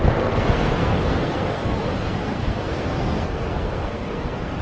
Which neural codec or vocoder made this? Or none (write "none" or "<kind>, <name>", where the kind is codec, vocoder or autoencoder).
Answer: codec, SNAC